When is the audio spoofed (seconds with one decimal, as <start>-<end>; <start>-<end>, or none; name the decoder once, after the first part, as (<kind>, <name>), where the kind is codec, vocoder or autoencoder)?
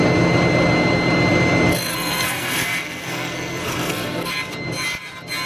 1.9-4.3 (codec, SNAC)